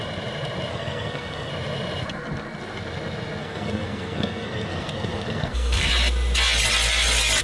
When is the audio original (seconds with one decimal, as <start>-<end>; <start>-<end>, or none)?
0.0-0.7; 1.5-3.4; 5.9-7.4

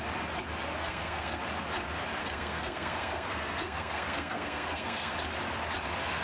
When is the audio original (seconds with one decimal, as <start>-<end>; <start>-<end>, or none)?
0.0-0.8; 1.4-2.2; 5.1-6.2

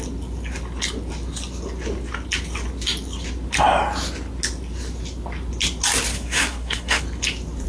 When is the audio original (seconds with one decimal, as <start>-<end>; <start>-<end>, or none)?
0.0-6.1; 7.0-7.7

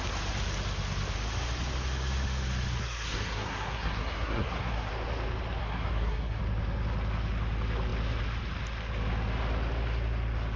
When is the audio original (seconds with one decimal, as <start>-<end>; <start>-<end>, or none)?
0.0-2.8; 4.9-5.6; 6.4-10.6

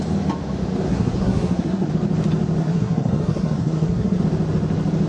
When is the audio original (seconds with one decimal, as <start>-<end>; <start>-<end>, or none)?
0.0-0.9; 1.9-2.6; 4.2-5.1

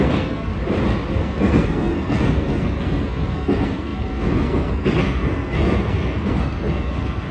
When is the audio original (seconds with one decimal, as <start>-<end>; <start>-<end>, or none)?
0.5-1.2